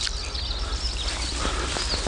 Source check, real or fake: real